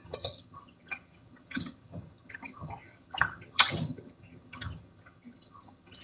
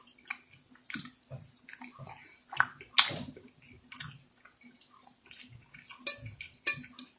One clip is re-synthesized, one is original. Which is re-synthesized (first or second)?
first